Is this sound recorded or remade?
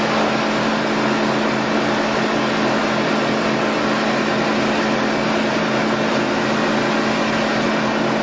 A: recorded